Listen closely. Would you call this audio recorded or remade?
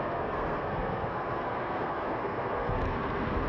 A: remade